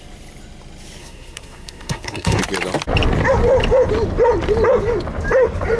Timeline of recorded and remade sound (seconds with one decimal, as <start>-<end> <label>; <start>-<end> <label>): 0.0-1.0 recorded; 1.0-2.4 remade; 2.4-5.8 recorded

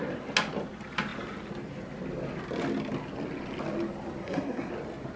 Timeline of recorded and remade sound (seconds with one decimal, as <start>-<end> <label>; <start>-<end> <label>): 0.0-4.2 recorded; 4.2-4.7 remade; 4.7-5.2 recorded

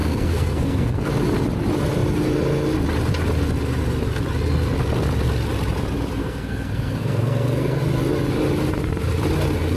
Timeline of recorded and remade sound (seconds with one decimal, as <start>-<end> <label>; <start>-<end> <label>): 0.0-1.1 remade; 1.1-6.2 recorded; 6.2-7.8 remade; 7.8-9.8 recorded

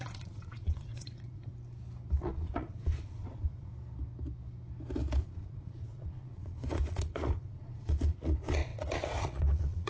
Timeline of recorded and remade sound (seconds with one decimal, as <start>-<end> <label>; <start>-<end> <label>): 0.0-1.5 remade; 1.5-2.2 recorded; 2.2-3.7 remade; 3.7-5.2 recorded; 5.2-9.9 remade

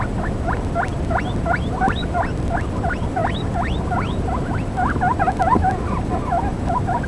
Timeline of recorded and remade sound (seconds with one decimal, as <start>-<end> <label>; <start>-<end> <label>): 0.0-7.1 recorded

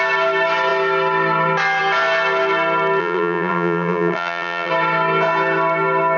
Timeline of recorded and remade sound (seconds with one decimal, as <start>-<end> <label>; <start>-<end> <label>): 0.0-3.0 recorded; 3.0-4.7 remade; 4.7-6.2 recorded